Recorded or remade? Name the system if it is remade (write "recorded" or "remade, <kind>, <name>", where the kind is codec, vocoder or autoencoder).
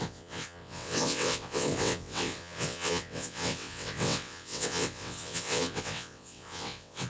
remade, vocoder, WaveNeXt